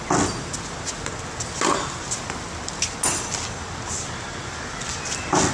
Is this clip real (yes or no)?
yes